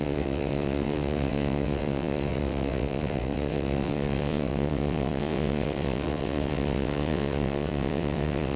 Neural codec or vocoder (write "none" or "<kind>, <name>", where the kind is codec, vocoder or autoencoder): vocoder, WaveNeXt